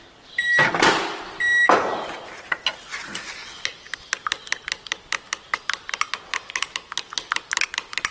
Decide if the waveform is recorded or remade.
recorded